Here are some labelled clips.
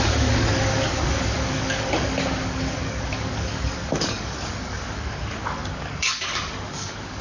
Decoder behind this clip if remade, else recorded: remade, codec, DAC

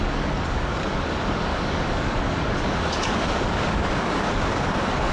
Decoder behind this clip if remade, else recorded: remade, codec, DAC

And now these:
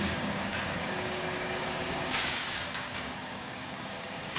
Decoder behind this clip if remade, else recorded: remade, codec, DAC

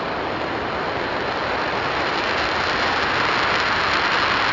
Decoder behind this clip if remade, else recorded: recorded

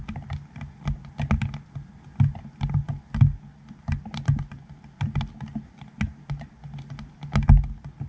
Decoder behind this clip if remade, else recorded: recorded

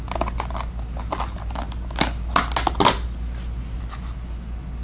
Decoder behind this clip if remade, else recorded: recorded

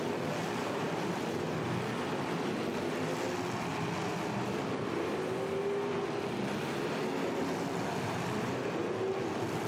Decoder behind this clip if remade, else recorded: recorded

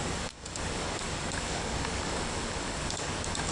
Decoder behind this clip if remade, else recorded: remade, codec, DAC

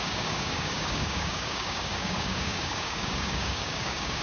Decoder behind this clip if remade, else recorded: remade, codec, DAC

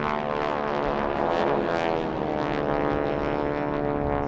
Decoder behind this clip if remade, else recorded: recorded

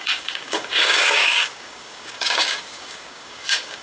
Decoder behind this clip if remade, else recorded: remade, codec, DAC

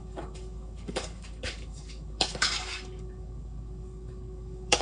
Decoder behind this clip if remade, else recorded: remade, codec, DAC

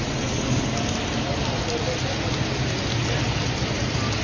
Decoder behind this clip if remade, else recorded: recorded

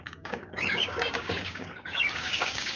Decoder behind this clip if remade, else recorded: remade, codec, DAC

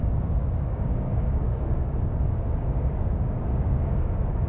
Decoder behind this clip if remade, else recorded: remade, codec, DAC